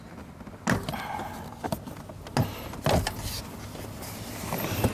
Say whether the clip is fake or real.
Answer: real